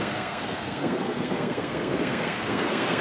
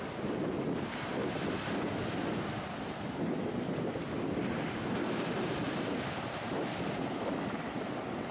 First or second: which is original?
second